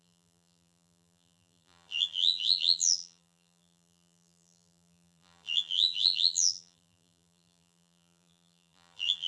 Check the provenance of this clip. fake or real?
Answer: fake